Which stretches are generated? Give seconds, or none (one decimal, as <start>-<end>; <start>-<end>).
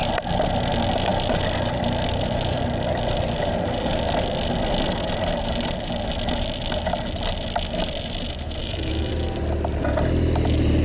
8.6-9.1